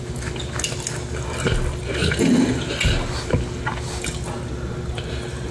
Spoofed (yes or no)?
no